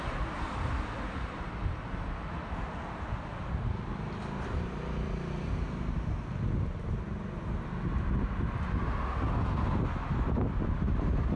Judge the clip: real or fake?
real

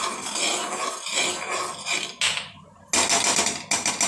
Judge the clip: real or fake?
real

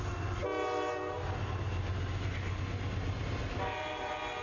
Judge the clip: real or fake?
real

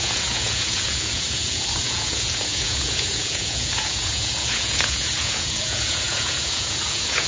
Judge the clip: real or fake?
fake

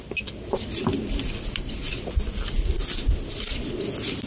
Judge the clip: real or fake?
real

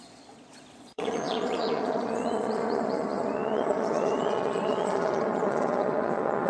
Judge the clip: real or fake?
fake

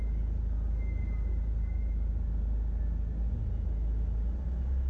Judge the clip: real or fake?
real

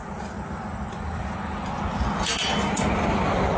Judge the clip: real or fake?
real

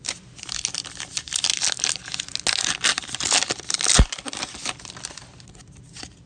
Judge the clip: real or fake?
real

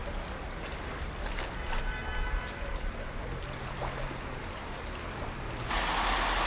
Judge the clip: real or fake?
real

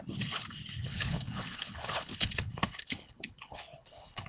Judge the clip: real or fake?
fake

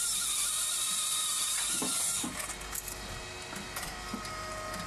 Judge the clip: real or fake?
real